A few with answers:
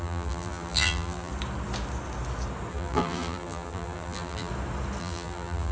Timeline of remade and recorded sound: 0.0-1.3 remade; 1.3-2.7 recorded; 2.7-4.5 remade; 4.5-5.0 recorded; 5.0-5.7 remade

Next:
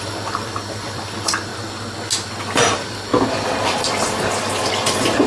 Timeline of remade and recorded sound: 0.0-1.5 remade; 1.5-2.4 recorded; 2.4-5.3 remade

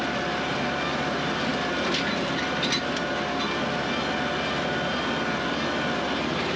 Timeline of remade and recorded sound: 0.0-6.6 recorded